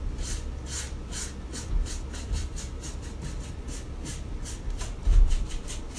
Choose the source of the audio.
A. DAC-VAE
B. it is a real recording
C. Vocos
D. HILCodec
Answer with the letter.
B